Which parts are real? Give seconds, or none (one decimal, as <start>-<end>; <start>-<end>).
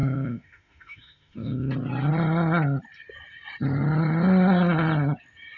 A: 1.7-5.6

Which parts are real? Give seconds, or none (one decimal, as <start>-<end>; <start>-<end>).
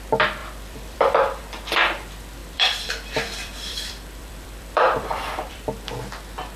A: 0.0-0.4; 1.4-2.4; 5.9-6.6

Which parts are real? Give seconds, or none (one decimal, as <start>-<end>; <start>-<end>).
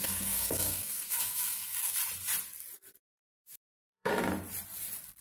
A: 2.0-3.4; 4.1-5.2